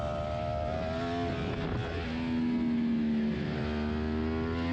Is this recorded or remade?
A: recorded